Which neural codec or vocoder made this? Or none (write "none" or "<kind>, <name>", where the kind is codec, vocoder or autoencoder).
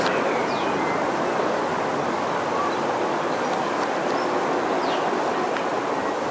none